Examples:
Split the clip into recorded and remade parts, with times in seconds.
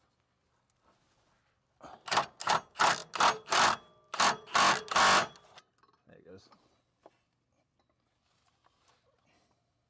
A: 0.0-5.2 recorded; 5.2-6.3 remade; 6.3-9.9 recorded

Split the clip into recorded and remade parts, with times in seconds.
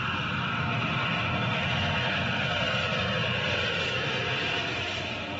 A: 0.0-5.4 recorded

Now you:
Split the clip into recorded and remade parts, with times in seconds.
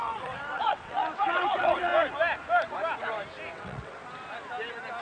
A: 0.0-1.9 remade; 1.9-3.5 recorded; 3.5-4.0 remade; 4.0-5.0 recorded